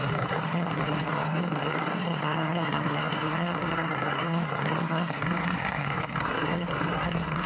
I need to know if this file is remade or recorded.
remade